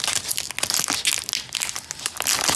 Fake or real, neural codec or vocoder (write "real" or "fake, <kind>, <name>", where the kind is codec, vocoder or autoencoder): real